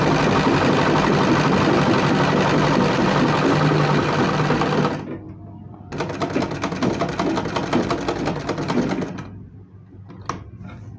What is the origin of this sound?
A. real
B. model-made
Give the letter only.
A